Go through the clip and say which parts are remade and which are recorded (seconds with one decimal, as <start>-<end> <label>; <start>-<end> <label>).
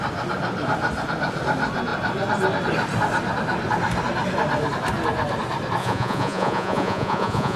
0.0-5.8 recorded; 5.8-7.6 remade